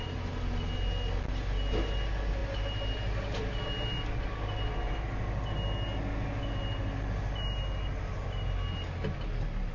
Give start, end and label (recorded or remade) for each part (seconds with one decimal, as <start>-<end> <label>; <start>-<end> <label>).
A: 0.0-9.7 recorded